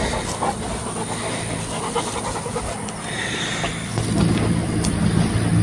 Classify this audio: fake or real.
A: real